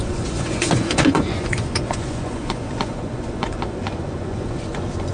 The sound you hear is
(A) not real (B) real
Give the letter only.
A